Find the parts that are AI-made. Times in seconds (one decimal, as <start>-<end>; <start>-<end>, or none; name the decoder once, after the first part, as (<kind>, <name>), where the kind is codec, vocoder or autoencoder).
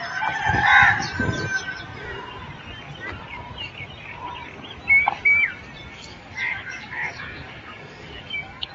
5.9-8.7 (codec, DAC)